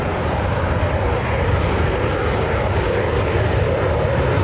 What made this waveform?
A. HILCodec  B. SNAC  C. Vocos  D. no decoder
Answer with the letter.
D